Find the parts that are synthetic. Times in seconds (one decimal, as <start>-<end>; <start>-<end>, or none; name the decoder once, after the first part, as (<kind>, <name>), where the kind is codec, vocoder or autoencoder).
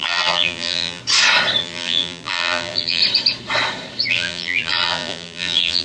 0.0-1.0 (vocoder, BigVGAN v2); 1.6-3.0; 4.1-5.8